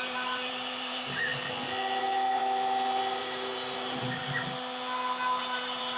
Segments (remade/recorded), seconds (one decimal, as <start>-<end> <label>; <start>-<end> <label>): 0.0-1.3 remade; 1.3-2.0 recorded; 2.0-2.4 remade; 2.4-3.2 recorded; 3.2-4.2 remade; 4.2-5.4 recorded; 5.4-6.0 remade